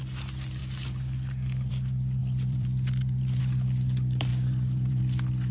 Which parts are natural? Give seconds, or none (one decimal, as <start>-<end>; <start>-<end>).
0.0-2.2; 3.4-4.3; 5.0-5.5